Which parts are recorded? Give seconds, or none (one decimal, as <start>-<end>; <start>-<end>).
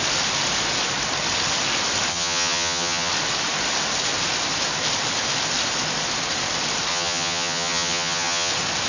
0.0-2.1; 3.1-6.9; 8.5-8.9